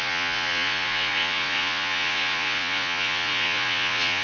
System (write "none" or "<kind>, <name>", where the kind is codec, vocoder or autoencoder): vocoder, Vocos